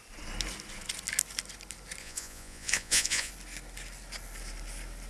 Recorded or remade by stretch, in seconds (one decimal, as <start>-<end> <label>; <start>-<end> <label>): 0.0-2.0 recorded; 2.0-3.3 remade; 3.3-5.1 recorded